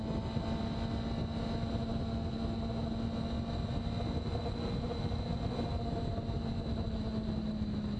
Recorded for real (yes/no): yes